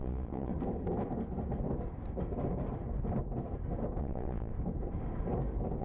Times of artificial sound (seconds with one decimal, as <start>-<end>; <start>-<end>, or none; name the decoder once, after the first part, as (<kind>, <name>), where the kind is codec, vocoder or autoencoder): 0.0-0.5 (vocoder, Vocos); 4.0-4.5